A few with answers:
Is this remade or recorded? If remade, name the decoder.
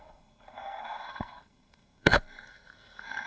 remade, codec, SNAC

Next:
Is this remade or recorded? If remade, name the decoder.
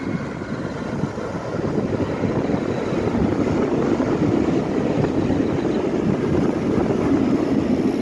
recorded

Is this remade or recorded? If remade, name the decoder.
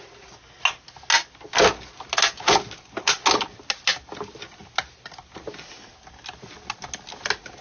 recorded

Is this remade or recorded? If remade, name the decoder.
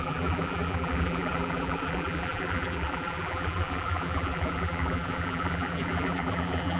remade, vocoder, BigVGAN v2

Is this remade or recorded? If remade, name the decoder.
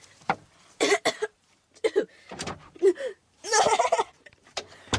remade, vocoder, BigVGAN v2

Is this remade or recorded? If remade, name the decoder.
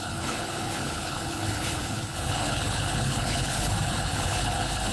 remade, codec, HILCodec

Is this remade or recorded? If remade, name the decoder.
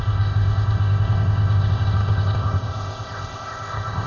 remade, codec, ZipCodec